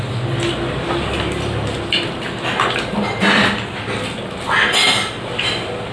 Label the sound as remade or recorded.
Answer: recorded